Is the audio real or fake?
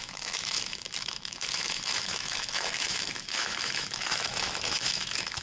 fake